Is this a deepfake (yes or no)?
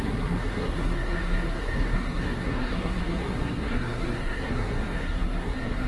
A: yes